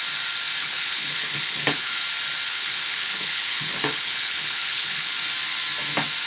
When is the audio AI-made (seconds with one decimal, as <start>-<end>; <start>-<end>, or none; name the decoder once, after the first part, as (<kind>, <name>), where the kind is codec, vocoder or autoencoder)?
0.6-2.0 (codec, HILCodec); 2.5-5.2